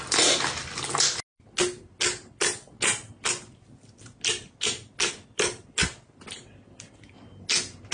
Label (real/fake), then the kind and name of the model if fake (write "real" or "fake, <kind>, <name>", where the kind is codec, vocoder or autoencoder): real